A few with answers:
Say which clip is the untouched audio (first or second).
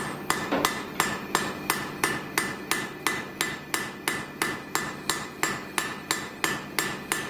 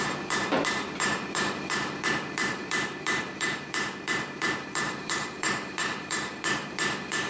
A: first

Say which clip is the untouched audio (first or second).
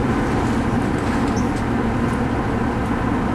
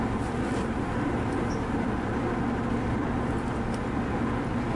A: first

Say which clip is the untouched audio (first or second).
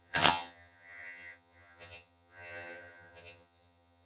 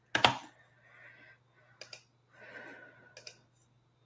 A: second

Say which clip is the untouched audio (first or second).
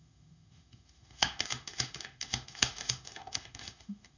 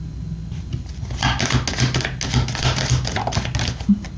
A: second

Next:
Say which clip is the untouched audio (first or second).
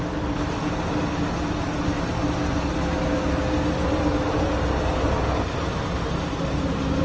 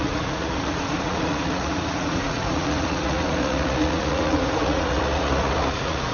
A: first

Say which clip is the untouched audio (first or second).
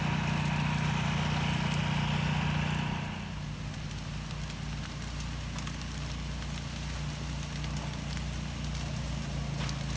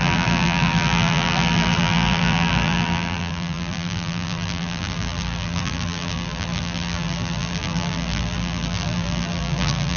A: first